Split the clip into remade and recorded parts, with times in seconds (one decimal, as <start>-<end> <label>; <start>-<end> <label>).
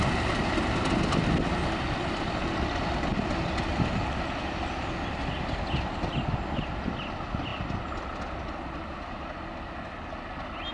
0.0-10.7 recorded